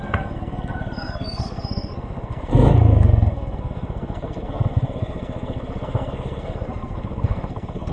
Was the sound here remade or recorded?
remade